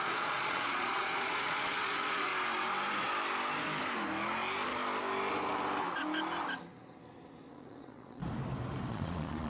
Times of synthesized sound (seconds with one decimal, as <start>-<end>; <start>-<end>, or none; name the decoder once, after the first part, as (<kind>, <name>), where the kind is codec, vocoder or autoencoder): 0.0-2.3 (vocoder, Vocos); 7.5-8.2; 8.9-9.5